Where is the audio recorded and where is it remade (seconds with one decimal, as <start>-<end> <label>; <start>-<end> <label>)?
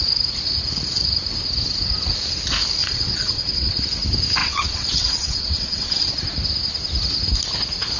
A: 0.0-2.8 recorded; 2.8-3.8 remade; 3.8-4.4 recorded; 4.4-6.1 remade; 6.1-8.0 recorded